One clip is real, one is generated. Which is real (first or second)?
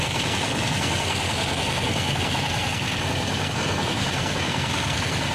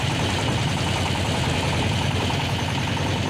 second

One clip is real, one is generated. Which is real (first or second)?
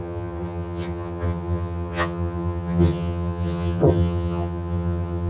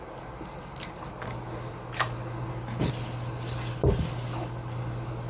second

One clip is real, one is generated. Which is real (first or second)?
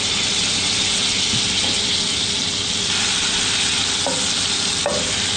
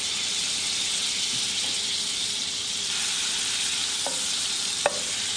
first